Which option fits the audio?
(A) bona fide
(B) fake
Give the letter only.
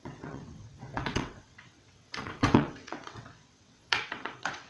B